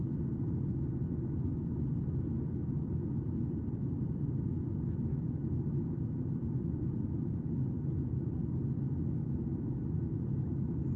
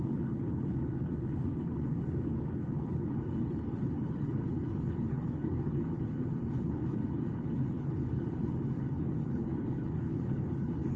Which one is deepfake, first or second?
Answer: second